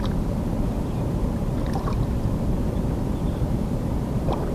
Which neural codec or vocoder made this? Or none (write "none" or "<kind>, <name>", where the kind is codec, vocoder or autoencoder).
vocoder, BigVGAN v2